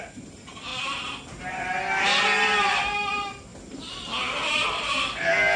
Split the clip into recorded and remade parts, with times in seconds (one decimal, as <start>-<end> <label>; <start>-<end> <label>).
0.0-5.6 recorded